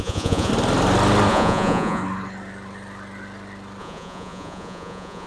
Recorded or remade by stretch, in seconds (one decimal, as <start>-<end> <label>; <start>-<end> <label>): 0.0-0.5 remade; 0.5-1.3 recorded; 1.3-2.0 remade; 2.0-3.8 recorded; 3.8-5.3 remade

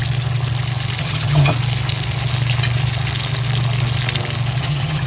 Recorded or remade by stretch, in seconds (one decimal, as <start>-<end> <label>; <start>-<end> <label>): 0.0-1.0 recorded; 1.0-1.5 remade; 1.5-4.6 recorded; 4.6-5.1 remade